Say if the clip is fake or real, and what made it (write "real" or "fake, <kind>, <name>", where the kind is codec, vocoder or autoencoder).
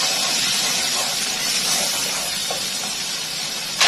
fake, vocoder, BigVGAN v2